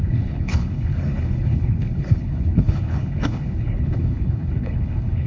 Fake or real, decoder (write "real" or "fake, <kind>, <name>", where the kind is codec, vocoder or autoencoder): fake, codec, HILCodec